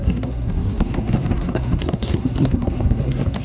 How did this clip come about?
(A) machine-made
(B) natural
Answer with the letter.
A